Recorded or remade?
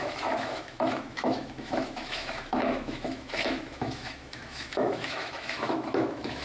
remade